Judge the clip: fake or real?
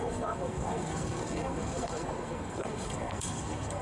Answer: fake